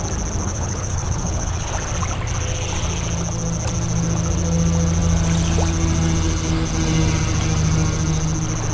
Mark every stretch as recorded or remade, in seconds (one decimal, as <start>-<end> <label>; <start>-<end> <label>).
0.0-0.4 recorded; 0.4-1.7 remade; 1.7-8.7 recorded

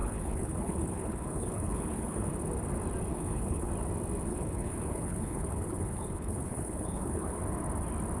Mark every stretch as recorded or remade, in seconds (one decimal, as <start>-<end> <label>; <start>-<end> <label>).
0.0-2.3 remade; 2.3-3.1 recorded; 3.1-3.7 remade; 3.7-4.3 recorded; 4.3-7.4 remade; 7.4-8.2 recorded

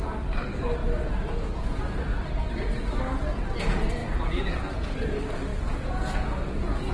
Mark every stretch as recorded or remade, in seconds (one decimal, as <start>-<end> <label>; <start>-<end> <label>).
0.0-4.0 recorded; 4.0-4.5 remade; 4.5-5.5 recorded; 5.5-6.9 remade

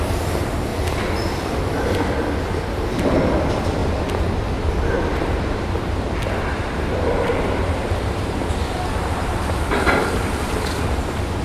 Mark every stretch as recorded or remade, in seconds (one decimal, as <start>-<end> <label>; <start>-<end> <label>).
0.0-0.7 remade; 0.7-2.9 recorded; 2.9-3.8 remade; 3.8-5.8 recorded; 5.8-8.4 remade; 8.4-9.2 recorded; 9.2-11.4 remade

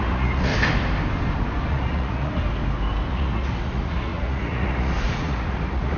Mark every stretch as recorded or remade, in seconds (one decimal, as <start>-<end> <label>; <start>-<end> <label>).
0.0-0.5 remade; 0.5-1.7 recorded; 1.7-2.4 remade; 2.4-3.1 recorded; 3.1-6.0 remade

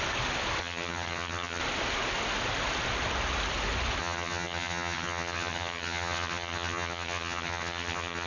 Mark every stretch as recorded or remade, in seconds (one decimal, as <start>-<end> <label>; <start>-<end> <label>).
0.0-0.6 recorded; 0.6-1.6 remade; 1.6-4.0 recorded; 4.0-8.3 remade